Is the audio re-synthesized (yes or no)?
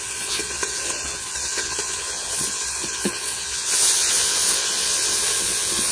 yes